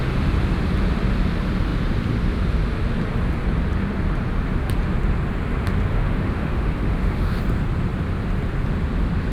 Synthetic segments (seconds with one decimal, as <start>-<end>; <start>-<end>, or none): 5.9-7.4